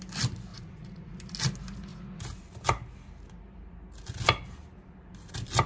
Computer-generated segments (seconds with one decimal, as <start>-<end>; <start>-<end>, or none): 0.5-1.1